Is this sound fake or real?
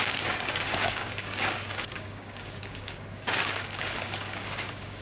fake